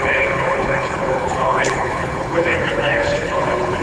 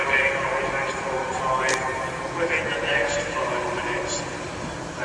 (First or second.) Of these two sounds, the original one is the second